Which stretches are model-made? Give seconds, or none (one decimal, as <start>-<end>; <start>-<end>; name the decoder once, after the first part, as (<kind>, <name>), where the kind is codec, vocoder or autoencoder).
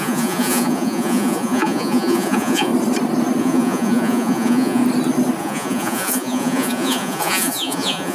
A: 0.0-2.7 (vocoder, Vocos); 3.4-4.8; 5.4-8.1